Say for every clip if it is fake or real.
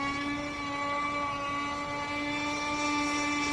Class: real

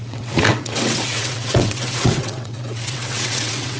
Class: fake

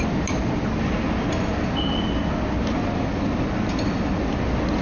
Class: real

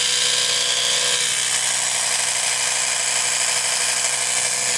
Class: real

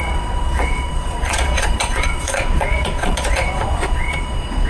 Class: fake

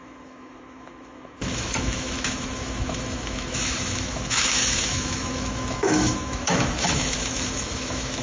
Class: fake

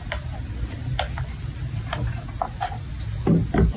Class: real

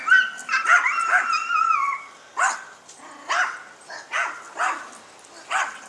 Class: real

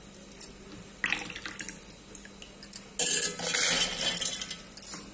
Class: real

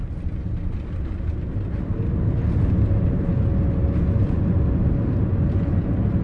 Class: real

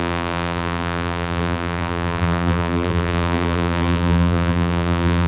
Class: fake